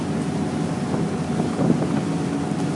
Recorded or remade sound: recorded